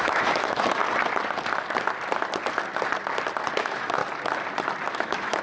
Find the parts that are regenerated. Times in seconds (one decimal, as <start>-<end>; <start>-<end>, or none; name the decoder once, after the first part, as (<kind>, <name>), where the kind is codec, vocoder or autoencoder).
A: 0.0-0.8 (autoencoder, DAC-VAE); 3.6-4.0; 4.9-5.4